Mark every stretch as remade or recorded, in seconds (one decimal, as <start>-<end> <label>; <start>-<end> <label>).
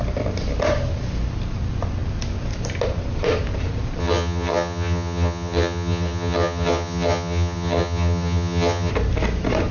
0.0-4.0 recorded; 4.0-8.9 remade; 8.9-9.7 recorded